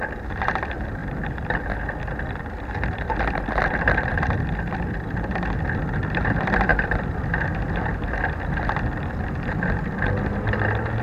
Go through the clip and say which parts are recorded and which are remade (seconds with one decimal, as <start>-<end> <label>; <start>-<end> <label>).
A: 0.0-1.0 recorded; 1.0-1.6 remade; 1.6-6.7 recorded; 6.7-7.2 remade; 7.2-11.0 recorded